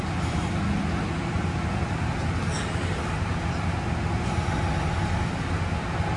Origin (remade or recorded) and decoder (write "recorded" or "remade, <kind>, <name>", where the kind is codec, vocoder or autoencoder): recorded